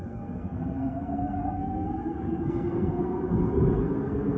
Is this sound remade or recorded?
remade